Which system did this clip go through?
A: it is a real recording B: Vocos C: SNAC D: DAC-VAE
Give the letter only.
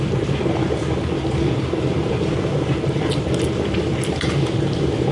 A